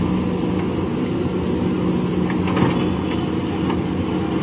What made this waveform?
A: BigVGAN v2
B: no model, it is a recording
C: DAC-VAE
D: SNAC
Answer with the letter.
B